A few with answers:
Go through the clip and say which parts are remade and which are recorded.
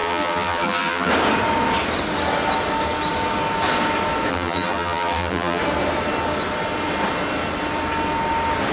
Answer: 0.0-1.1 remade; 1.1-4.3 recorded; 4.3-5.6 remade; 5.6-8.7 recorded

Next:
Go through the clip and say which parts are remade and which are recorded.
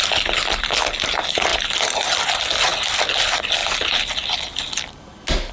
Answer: 0.0-5.5 recorded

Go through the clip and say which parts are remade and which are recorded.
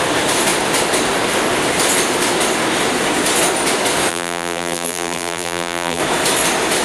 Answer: 0.0-4.1 recorded; 4.1-6.0 remade; 6.0-6.8 recorded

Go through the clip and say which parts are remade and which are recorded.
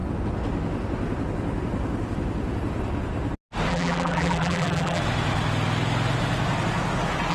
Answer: 0.0-3.7 recorded; 3.7-5.0 remade; 5.0-7.3 recorded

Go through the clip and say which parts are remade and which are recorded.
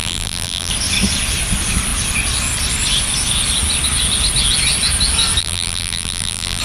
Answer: 0.0-0.7 remade; 0.7-5.4 recorded; 5.4-6.6 remade